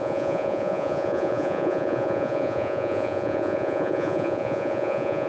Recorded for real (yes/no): no